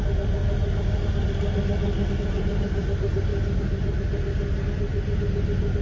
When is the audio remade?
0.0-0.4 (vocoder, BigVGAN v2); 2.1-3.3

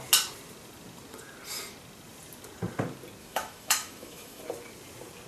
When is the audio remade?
3.2-4.4 (autoencoder, DAC-VAE)

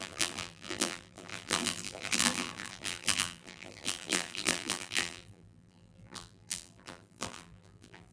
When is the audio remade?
0.0-8.1 (vocoder, BigVGAN v2)

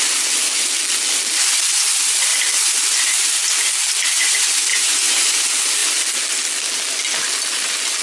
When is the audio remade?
4.7-5.3 (vocoder, Vocos)

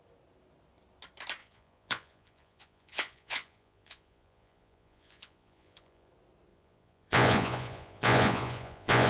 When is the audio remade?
1.4-6.1 (vocoder, Vocos); 6.5-9.1